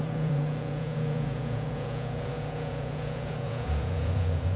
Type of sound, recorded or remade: remade